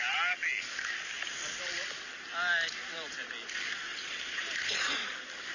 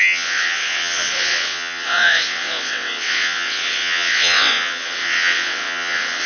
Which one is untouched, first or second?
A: first